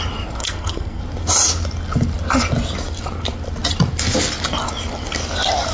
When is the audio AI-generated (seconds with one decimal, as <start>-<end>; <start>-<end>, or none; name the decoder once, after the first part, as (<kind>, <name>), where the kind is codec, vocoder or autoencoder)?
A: 0.4-1.0 (codec, SNAC)